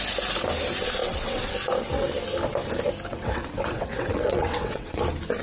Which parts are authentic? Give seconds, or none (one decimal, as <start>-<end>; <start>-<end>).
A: 0.0-1.0; 1.5-3.1; 5.0-5.4